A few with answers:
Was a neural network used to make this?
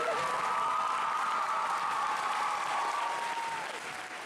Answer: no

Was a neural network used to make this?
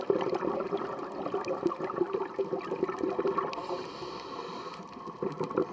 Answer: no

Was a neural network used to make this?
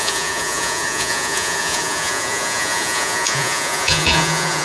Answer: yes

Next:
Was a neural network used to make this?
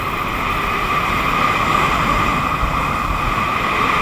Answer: no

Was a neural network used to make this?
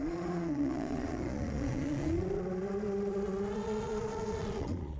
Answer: yes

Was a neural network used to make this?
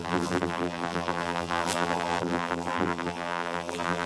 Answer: yes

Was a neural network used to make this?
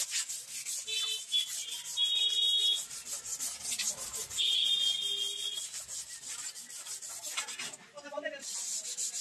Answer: no